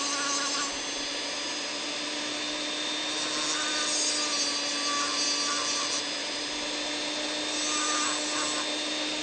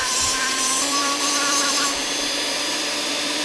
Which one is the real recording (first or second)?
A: first